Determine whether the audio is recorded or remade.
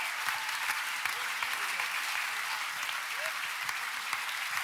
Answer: recorded